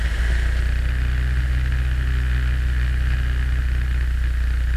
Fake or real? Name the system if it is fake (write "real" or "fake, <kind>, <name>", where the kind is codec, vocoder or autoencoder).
real